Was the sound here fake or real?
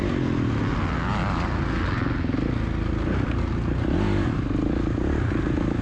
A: real